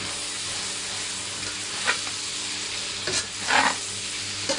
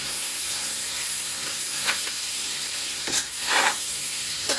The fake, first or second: second